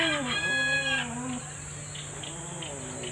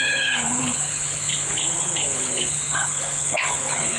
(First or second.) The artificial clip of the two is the second